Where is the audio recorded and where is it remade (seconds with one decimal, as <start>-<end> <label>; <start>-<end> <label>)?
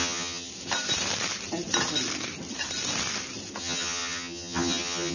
0.0-0.5 remade; 0.5-3.6 recorded; 3.6-5.1 remade